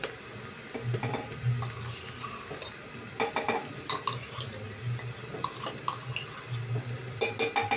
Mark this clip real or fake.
real